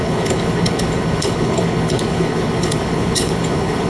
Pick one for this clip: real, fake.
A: fake